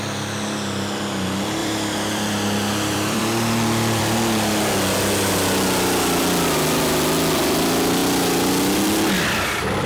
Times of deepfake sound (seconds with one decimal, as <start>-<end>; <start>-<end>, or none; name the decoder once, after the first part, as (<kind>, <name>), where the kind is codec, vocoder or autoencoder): 1.6-4.0 (vocoder, BigVGAN v2)